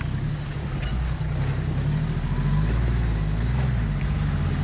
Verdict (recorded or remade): recorded